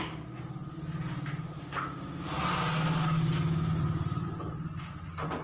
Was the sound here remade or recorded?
recorded